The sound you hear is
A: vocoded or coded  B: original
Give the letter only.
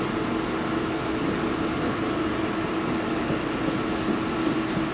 B